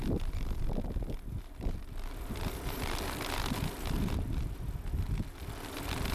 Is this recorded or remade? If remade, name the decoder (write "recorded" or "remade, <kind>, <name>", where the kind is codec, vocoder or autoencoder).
recorded